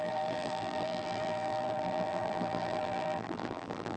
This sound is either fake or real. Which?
fake